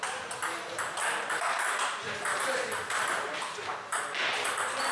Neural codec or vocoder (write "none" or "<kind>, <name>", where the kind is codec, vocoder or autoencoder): none